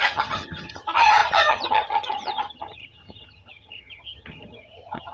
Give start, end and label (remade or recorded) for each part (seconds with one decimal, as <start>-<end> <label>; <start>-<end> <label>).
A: 0.0-5.1 remade